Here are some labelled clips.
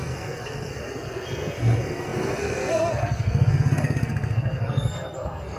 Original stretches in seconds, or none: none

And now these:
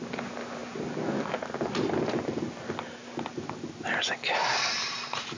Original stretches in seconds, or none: 0.0-5.4

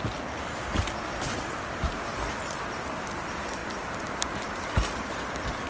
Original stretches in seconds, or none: 0.0-3.6

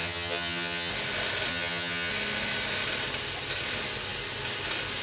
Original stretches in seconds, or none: 0.9-1.5; 2.1-5.0